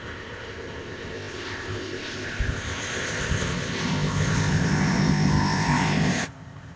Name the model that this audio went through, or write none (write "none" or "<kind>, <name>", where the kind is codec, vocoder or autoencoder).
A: codec, ZipCodec